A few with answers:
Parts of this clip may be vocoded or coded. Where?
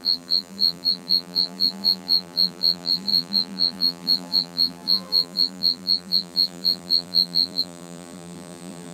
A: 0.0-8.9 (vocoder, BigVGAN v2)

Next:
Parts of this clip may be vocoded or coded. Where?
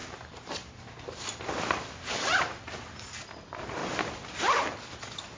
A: 0.0-1.4 (vocoder, BigVGAN v2)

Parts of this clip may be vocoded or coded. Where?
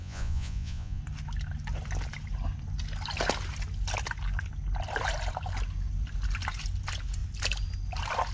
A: 0.0-1.0 (vocoder, Vocos)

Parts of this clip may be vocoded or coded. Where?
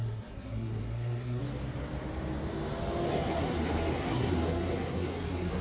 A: 0.0-1.4 (codec, SNAC); 3.1-5.6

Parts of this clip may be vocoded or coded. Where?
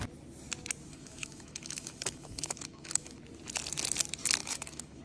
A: 0.9-3.2 (autoencoder, DAC-VAE); 4.4-5.0